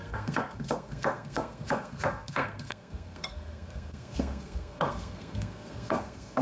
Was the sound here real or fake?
fake